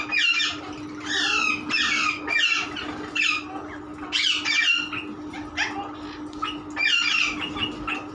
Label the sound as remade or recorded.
recorded